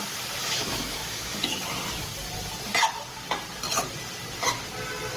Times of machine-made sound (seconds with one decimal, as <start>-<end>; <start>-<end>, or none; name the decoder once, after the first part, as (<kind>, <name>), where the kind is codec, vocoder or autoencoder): 0.4-2.1 (autoencoder, DAC-VAE)